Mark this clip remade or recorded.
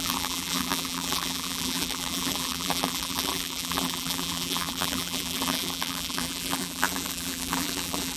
remade